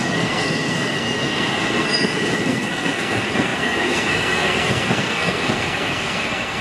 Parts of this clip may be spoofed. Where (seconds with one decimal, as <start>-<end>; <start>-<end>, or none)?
0.0-6.6